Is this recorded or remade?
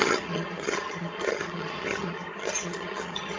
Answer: remade